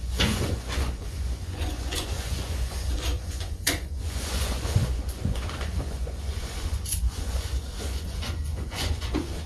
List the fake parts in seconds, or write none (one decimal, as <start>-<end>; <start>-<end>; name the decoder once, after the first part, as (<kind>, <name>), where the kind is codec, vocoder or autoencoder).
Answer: 0.0-9.5 (vocoder, Vocos)